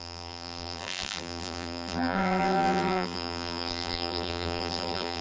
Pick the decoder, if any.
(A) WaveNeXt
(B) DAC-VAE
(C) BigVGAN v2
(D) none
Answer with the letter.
C